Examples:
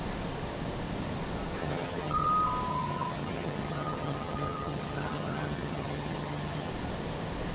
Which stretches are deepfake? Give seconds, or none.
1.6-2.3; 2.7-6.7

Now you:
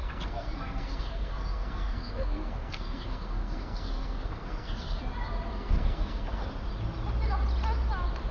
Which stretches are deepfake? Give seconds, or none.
0.0-5.0; 5.5-6.5

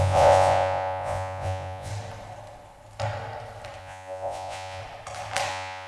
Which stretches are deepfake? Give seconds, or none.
0.0-1.9; 3.8-4.8; 5.5-5.9